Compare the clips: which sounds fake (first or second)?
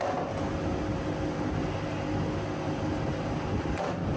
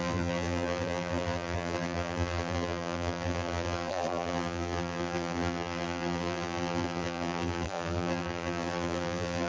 second